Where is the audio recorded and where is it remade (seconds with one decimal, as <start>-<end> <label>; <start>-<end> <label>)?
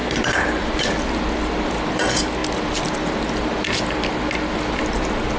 0.0-5.4 recorded